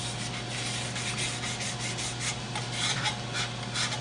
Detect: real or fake real